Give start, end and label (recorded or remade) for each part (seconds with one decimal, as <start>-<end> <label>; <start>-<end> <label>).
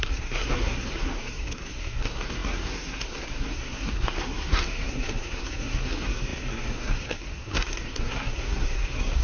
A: 0.0-9.2 remade